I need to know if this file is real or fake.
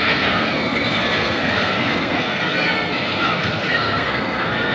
fake